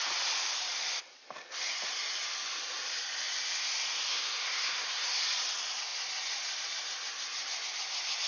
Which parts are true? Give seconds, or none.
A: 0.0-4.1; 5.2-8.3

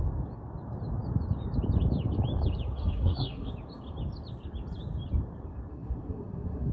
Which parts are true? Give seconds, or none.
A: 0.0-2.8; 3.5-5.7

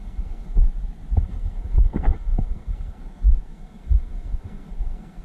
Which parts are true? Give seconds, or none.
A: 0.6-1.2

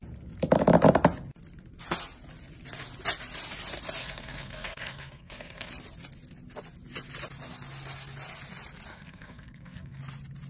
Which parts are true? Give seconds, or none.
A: 0.0-4.0; 5.7-8.9; 10.0-10.5

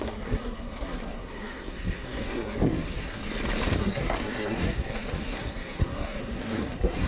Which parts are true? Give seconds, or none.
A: 3.2-3.8